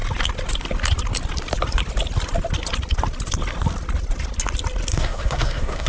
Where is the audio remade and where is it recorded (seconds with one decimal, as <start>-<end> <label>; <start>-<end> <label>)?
0.0-4.9 recorded; 4.9-5.9 remade